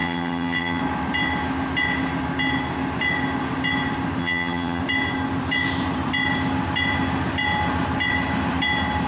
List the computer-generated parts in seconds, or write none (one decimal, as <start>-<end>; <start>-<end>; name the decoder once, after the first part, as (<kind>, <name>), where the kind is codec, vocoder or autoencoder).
0.0-0.8 (vocoder, HiFi-GAN); 4.2-4.8